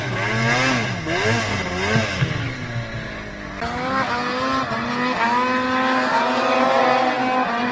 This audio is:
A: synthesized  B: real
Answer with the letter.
B